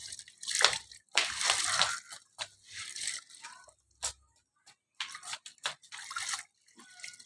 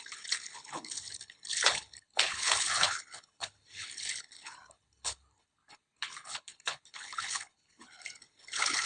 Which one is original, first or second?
first